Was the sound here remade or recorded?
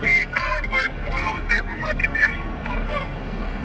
remade